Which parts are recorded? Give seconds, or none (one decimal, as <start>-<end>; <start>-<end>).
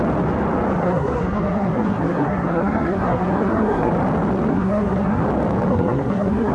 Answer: 0.0-0.8; 3.9-4.5; 5.2-5.7